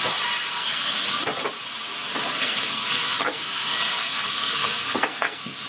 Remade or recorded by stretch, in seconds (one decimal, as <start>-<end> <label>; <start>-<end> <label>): 0.0-0.5 recorded; 0.5-1.2 remade; 1.2-2.3 recorded; 2.3-5.7 remade